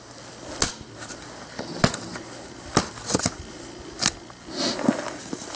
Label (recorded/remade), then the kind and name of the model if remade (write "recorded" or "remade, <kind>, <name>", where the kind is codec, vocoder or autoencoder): recorded